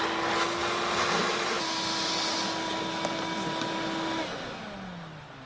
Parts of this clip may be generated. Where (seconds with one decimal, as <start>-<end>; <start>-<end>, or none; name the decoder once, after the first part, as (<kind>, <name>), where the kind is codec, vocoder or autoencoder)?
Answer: none